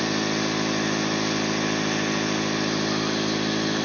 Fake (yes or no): no